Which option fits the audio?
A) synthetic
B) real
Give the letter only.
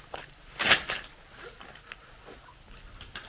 B